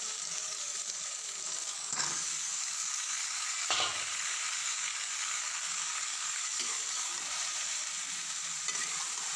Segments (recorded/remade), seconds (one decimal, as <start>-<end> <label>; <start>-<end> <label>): 0.0-7.1 remade; 7.1-9.4 recorded